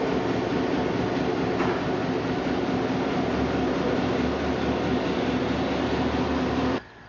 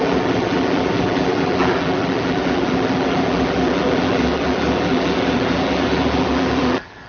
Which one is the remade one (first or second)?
second